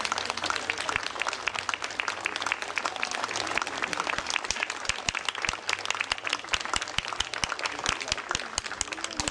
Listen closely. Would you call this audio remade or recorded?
recorded